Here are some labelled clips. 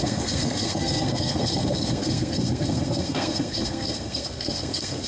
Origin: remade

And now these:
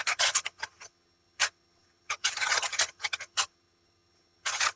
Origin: remade